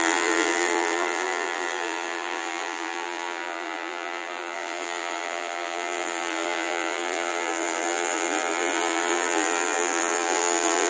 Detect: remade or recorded remade